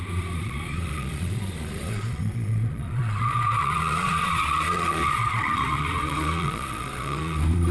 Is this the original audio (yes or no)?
no